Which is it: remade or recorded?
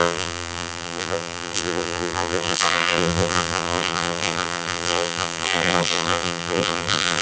remade